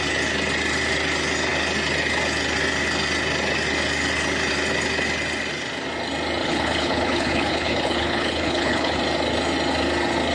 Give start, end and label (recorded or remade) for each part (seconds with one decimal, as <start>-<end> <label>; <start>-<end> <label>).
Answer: 0.0-6.4 recorded; 6.4-9.0 remade; 9.0-10.3 recorded